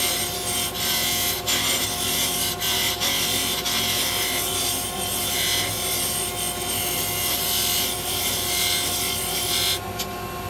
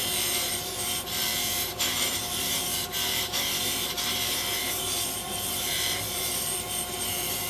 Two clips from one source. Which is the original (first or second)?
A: first